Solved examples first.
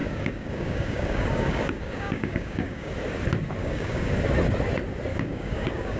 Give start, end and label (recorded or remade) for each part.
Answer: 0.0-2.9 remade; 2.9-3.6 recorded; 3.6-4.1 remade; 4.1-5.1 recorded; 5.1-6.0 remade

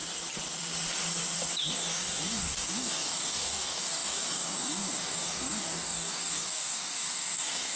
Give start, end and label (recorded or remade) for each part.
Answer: 0.0-1.7 recorded; 1.7-7.8 remade

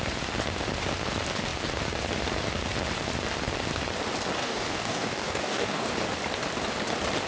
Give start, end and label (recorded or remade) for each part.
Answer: 0.0-4.4 recorded; 4.4-5.9 remade; 5.9-7.3 recorded

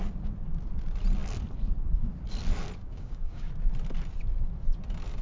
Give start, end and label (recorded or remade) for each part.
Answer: 0.0-2.8 recorded; 2.8-3.5 remade; 3.5-5.2 recorded

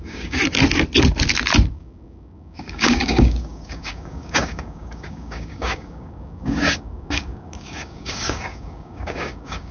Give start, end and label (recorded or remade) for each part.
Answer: 0.0-0.4 remade; 0.4-1.7 recorded; 1.7-9.7 remade

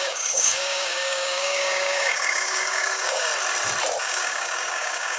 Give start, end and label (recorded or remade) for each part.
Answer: 0.0-3.3 remade; 3.3-4.0 recorded; 4.0-5.2 remade